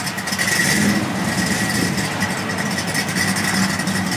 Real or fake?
real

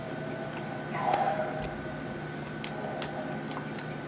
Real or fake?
real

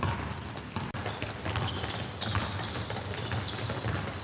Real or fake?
real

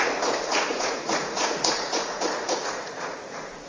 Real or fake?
fake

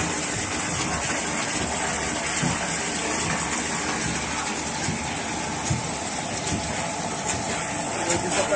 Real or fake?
real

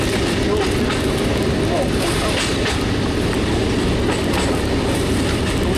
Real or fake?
real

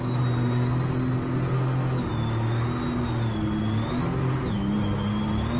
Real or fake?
real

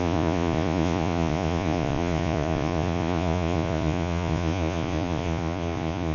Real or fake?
fake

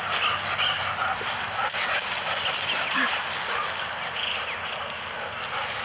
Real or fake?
real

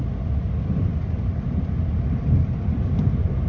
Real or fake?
real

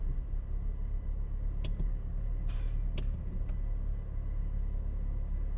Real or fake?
real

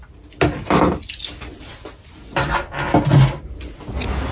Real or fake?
real